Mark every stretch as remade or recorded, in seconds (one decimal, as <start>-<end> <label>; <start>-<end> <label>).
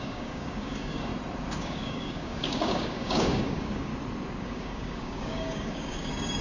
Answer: 0.0-1.1 remade; 1.1-1.6 recorded; 1.6-3.9 remade; 3.9-4.4 recorded; 4.4-6.4 remade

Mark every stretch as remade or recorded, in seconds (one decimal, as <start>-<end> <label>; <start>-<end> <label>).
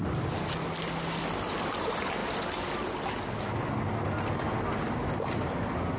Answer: 0.0-6.0 recorded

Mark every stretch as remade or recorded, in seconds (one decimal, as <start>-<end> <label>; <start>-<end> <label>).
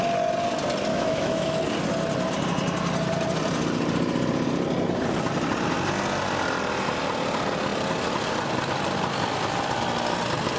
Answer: 0.0-0.9 recorded; 0.9-1.6 remade; 1.6-10.6 recorded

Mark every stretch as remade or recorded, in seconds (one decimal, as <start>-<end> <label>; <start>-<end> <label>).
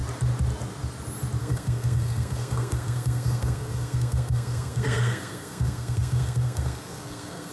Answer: 0.0-1.4 recorded; 1.4-7.5 remade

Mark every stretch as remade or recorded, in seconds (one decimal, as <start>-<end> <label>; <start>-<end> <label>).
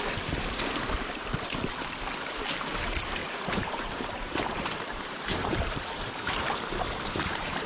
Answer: 0.0-7.7 remade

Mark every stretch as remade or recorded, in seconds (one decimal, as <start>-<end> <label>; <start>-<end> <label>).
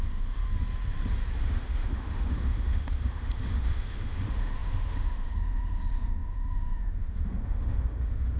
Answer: 0.0-0.4 remade; 0.4-1.4 recorded; 1.4-8.4 remade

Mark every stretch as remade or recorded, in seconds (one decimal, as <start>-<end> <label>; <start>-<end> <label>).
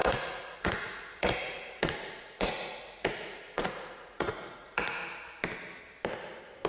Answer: 0.0-5.0 remade; 5.0-6.7 recorded